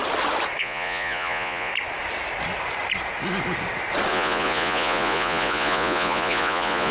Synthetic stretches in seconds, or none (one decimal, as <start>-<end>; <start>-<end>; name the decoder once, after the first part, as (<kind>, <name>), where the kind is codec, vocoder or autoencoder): 0.6-1.7 (vocoder, Vocos); 4.1-6.9